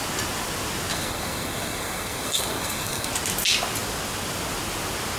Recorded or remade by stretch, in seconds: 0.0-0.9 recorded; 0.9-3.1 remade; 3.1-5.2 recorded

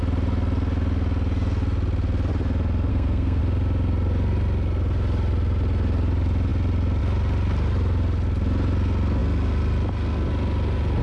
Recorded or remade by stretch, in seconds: 0.0-2.9 recorded; 2.9-3.4 remade; 3.4-11.0 recorded

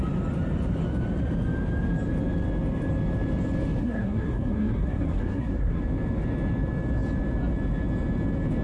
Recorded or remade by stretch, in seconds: 0.0-3.8 recorded; 3.8-5.8 remade; 5.8-8.6 recorded

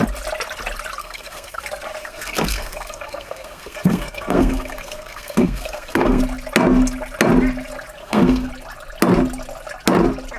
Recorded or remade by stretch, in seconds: 0.0-1.0 recorded; 1.0-1.6 remade; 1.6-2.0 recorded; 2.0-6.2 remade; 6.2-8.0 recorded; 8.0-8.5 remade; 8.5-10.4 recorded

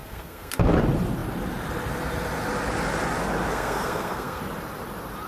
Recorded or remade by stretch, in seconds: 0.0-0.6 remade; 0.6-3.5 recorded; 3.5-4.4 remade; 4.4-5.3 recorded